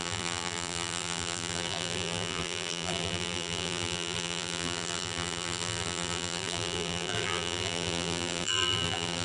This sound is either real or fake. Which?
fake